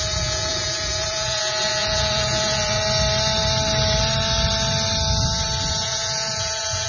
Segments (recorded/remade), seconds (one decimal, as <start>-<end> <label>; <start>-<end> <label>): 0.0-2.8 remade; 2.8-5.7 recorded; 5.7-6.9 remade